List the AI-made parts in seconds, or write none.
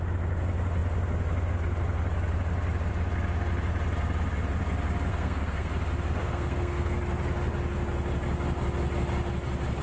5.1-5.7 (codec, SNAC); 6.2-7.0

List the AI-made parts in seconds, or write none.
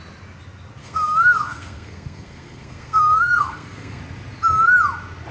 0.8-4.0 (codec, SNAC)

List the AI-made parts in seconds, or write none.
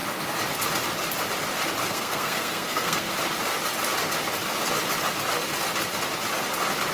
1.8-3.1 (codec, SNAC)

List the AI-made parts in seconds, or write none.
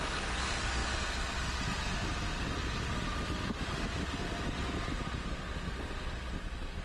none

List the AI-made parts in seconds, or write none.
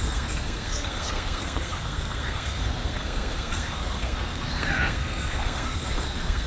0.0-6.5 (codec, SNAC)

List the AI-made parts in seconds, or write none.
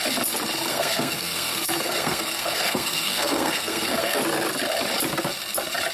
0.7-4.2 (codec, SNAC)